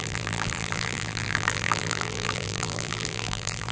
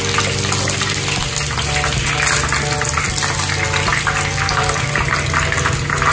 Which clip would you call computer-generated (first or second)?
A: first